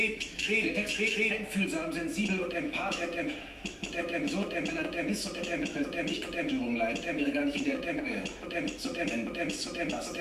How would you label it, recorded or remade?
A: remade